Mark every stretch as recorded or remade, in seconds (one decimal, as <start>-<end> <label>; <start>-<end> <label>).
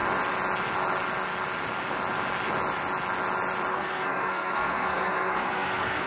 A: 0.0-3.7 recorded; 3.7-6.1 remade